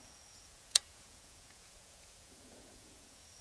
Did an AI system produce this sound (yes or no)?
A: yes